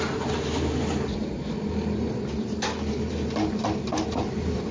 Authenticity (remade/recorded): recorded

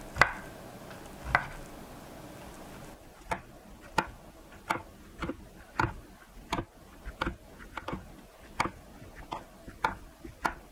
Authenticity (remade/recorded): recorded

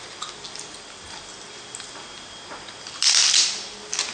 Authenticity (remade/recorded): recorded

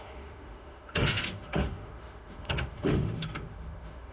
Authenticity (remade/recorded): remade